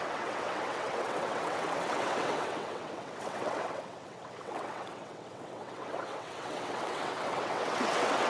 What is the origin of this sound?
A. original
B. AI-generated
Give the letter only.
B